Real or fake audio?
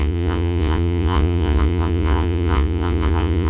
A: fake